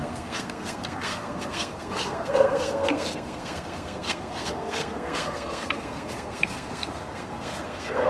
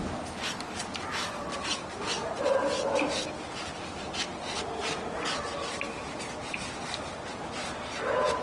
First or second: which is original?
second